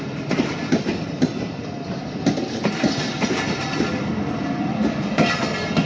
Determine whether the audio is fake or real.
real